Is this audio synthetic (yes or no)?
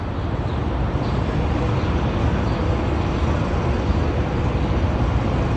no